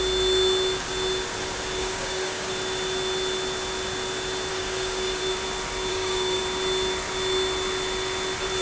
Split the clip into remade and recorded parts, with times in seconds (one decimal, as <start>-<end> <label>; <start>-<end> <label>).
0.0-1.8 recorded; 1.8-2.5 remade; 2.5-4.5 recorded; 4.5-5.2 remade; 5.2-5.9 recorded; 5.9-6.4 remade; 6.4-8.6 recorded